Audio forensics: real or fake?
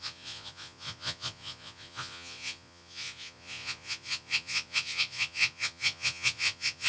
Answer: fake